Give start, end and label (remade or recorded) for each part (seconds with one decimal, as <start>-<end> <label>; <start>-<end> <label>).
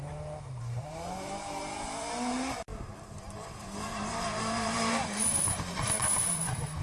0.0-6.8 remade